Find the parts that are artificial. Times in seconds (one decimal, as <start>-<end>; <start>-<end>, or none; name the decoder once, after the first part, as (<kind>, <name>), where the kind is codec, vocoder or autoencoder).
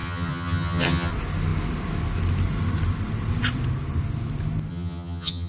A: 0.0-1.1 (vocoder, HiFi-GAN); 4.7-5.5